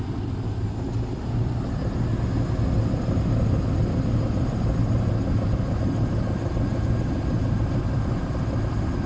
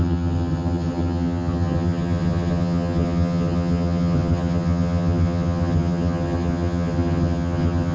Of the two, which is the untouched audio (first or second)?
first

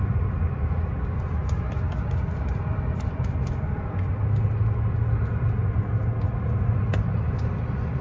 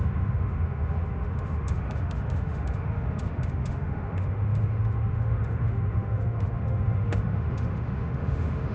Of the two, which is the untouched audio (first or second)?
first